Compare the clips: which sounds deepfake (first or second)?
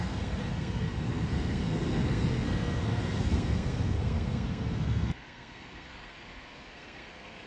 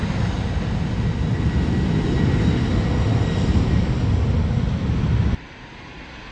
first